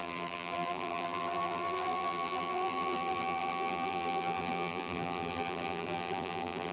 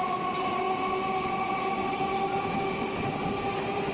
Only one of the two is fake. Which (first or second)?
first